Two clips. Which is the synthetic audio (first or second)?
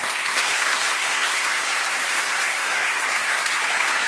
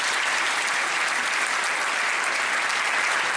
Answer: first